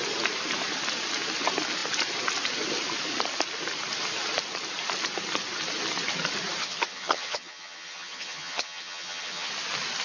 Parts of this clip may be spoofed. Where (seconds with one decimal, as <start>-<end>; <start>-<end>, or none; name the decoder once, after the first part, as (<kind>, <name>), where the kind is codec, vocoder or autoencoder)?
6.6-9.5 (vocoder, HiFi-GAN)